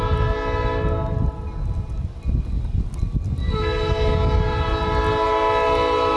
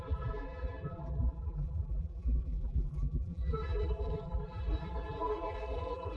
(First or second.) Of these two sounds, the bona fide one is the first